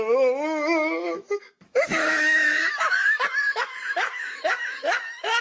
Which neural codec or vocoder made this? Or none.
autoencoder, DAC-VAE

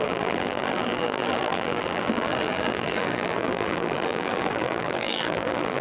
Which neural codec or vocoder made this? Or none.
vocoder, BigVGAN v2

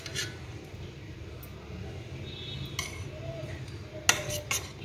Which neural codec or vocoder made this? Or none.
none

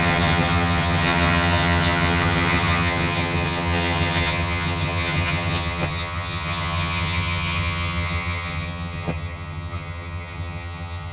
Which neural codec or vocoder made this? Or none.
vocoder, HiFi-GAN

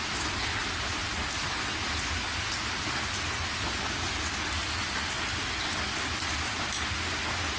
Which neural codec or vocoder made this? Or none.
none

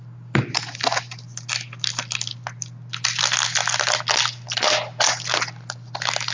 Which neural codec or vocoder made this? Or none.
none